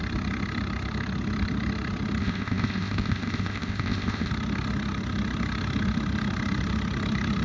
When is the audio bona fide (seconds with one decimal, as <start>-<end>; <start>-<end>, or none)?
0.0-2.2; 4.3-7.4